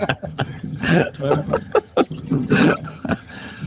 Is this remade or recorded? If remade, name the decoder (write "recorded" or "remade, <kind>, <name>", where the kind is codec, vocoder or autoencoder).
remade, vocoder, HiFi-GAN